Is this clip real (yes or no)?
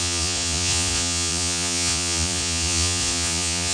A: no